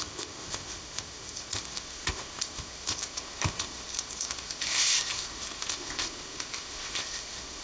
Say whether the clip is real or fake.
fake